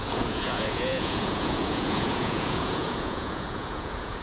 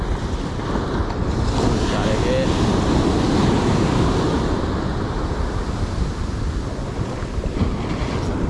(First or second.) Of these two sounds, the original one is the second